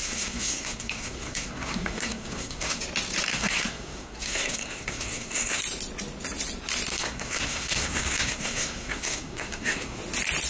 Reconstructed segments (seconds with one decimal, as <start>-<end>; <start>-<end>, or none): 0.0-2.8; 3.3-5.6; 6.9-10.0